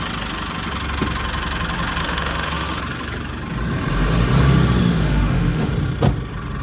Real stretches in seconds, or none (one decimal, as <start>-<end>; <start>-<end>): 0.0-2.0; 2.8-4.8; 5.7-6.6